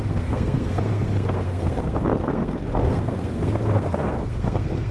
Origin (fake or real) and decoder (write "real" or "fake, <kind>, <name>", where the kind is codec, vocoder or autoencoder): fake, codec, SNAC